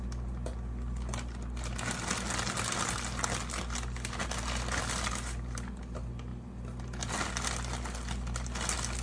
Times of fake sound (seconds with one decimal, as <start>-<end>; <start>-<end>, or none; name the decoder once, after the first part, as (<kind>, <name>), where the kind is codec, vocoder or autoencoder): none